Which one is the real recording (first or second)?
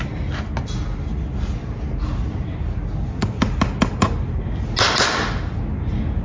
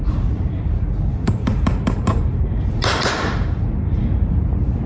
first